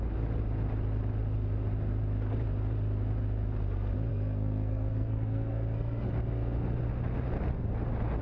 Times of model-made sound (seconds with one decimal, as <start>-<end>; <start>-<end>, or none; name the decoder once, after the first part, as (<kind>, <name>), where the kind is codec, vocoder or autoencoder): 4.1-6.1 (codec, SNAC)